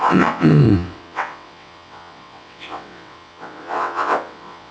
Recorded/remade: remade